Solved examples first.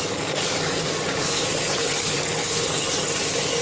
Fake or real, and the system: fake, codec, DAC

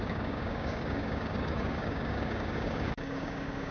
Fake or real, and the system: fake, codec, DAC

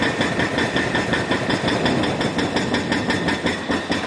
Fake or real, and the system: real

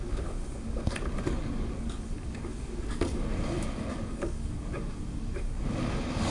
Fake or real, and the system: fake, codec, DAC